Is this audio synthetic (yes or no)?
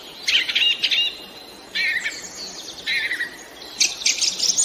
no